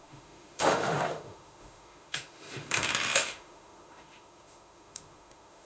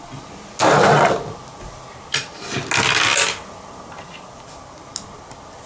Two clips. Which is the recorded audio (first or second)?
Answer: second